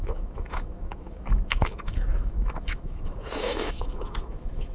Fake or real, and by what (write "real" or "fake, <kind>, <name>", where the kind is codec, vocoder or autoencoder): fake, autoencoder, DAC-VAE